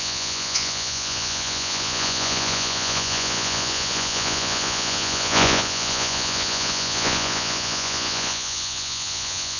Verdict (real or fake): fake